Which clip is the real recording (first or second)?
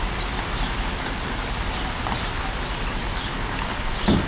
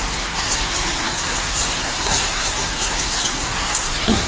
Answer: first